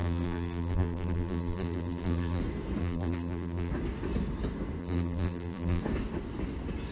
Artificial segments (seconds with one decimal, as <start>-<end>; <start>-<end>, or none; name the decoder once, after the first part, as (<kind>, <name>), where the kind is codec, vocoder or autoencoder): 0.0-2.4 (vocoder, BigVGAN v2); 2.8-3.7; 4.8-5.8